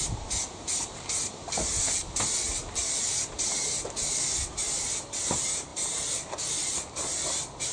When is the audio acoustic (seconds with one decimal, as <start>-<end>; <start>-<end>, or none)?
0.0-7.7